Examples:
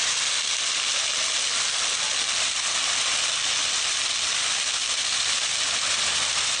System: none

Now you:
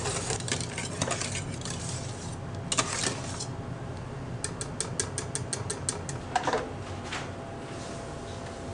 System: none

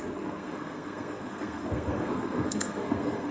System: codec, SNAC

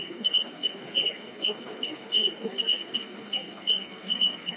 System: codec, SNAC